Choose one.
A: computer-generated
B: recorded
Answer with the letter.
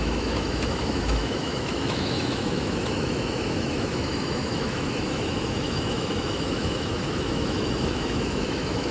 A